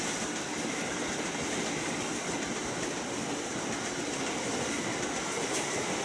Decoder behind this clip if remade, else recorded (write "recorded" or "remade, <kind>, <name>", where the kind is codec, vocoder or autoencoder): recorded